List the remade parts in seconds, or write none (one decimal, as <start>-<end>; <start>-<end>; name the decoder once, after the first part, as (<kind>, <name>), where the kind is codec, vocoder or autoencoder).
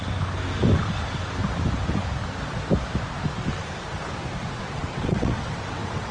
4.4-6.1 (vocoder, WaveNeXt)